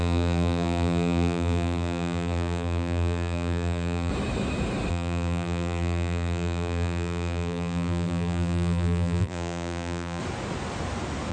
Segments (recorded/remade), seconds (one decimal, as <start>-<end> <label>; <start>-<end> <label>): 0.0-4.1 remade; 4.1-4.9 recorded; 4.9-10.2 remade; 10.2-11.3 recorded